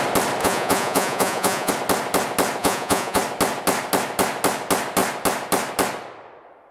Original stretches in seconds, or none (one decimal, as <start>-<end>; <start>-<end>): 0.0-0.4; 1.7-2.6; 3.2-6.7